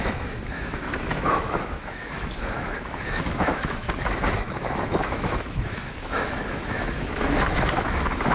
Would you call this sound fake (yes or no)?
yes